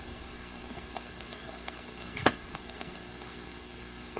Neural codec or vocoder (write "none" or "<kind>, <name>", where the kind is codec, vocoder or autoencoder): codec, SNAC